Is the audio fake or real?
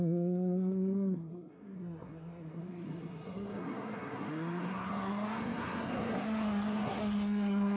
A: fake